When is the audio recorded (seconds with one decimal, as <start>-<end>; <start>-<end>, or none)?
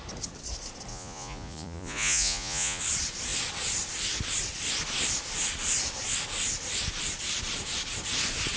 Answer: 0.0-0.9; 2.8-8.6